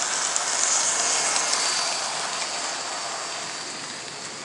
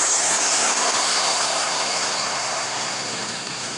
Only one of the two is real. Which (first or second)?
first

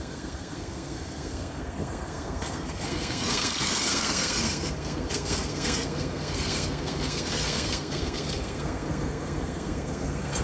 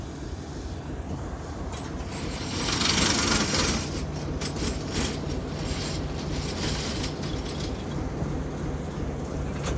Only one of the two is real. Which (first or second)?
second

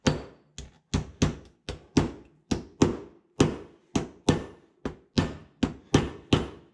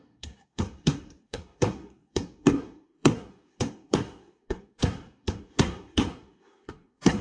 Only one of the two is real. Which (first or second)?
first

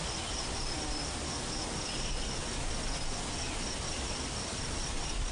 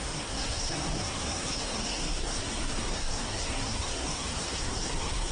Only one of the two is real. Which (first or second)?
first